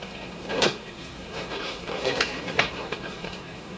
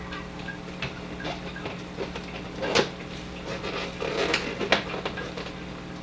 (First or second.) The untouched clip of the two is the second